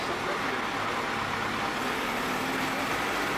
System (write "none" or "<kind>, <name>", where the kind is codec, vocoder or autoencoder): none